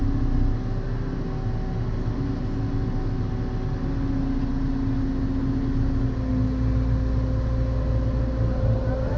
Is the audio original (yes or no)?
yes